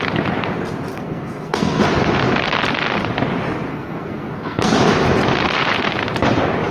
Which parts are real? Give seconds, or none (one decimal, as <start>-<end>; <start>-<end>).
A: 0.0-0.9; 1.8-3.7; 4.7-6.7